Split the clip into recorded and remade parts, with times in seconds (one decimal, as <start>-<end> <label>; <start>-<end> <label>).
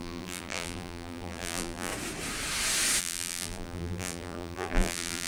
0.0-1.9 remade; 1.9-3.0 recorded; 3.0-5.3 remade